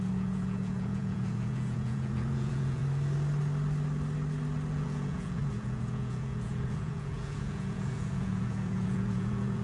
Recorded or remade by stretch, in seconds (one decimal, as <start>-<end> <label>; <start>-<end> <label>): 0.0-2.8 remade; 2.8-4.7 recorded; 4.7-9.6 remade